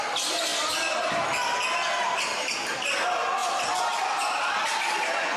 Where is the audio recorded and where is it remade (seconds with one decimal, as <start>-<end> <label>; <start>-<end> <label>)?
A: 0.0-2.0 recorded; 2.0-2.9 remade; 2.9-5.4 recorded